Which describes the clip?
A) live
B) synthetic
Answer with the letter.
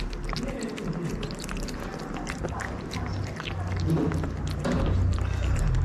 A